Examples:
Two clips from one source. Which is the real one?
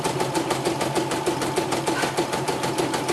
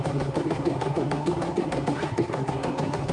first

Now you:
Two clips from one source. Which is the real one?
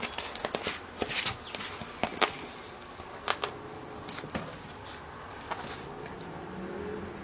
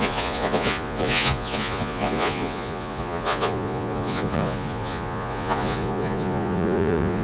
first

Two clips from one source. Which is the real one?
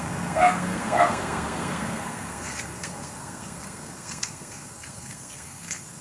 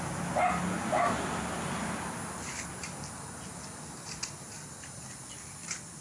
second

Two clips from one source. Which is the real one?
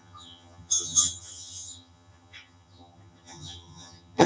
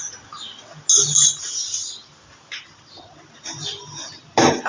second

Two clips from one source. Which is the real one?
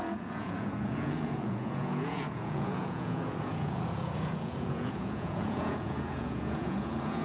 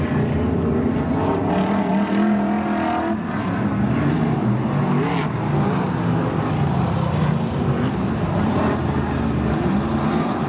second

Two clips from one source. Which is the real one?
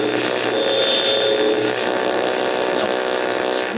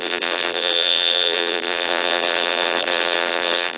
first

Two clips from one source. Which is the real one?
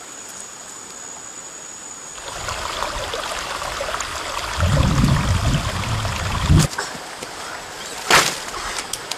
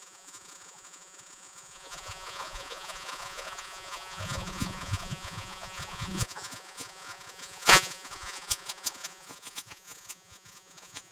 first